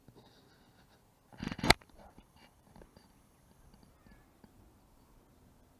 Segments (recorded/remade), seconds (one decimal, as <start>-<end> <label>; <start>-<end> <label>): 0.0-1.3 recorded; 1.3-3.9 remade; 3.9-5.8 recorded